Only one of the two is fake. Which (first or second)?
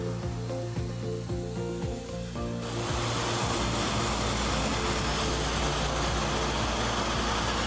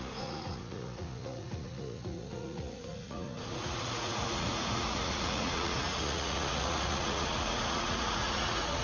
second